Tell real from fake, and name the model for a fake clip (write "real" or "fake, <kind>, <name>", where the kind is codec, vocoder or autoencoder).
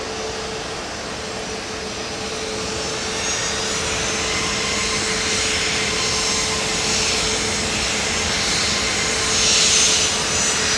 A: real